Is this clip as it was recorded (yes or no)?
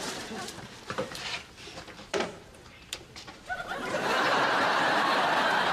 no